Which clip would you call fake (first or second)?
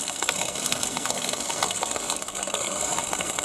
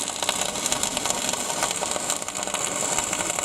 first